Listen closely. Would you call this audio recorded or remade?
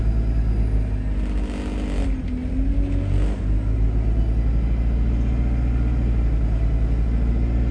recorded